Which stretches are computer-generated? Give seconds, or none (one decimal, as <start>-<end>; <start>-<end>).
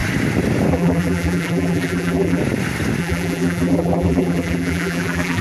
0.7-2.4; 3.0-5.4